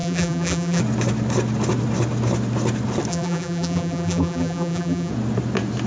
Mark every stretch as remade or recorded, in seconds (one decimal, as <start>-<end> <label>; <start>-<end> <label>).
0.0-0.8 remade; 0.8-3.1 recorded; 3.1-5.1 remade; 5.1-5.9 recorded